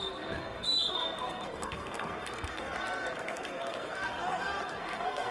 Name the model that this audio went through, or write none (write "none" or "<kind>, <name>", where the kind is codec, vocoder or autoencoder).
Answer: codec, SNAC